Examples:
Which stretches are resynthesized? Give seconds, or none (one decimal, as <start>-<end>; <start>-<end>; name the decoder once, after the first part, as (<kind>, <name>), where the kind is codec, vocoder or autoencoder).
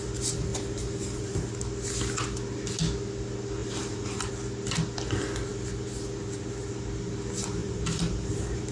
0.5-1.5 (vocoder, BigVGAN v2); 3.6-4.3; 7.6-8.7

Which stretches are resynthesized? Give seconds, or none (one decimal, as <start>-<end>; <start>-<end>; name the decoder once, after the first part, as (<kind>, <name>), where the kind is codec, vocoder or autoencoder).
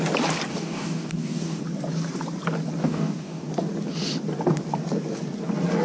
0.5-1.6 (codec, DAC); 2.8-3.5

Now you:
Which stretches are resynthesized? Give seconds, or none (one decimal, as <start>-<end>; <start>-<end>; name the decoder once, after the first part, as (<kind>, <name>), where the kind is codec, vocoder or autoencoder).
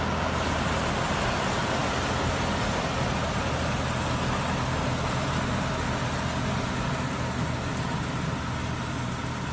none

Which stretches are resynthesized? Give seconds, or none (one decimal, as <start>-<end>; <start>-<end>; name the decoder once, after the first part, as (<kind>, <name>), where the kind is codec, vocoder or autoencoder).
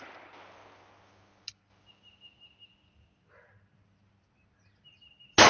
none